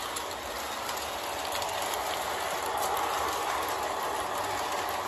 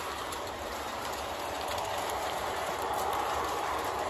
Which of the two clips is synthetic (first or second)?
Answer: second